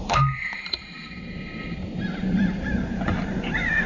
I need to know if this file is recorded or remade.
remade